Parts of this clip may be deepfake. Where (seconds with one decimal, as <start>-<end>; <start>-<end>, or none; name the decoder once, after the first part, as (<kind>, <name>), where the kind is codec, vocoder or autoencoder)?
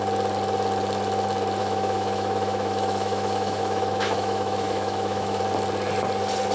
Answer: 1.6-5.4 (autoencoder, DAC-VAE)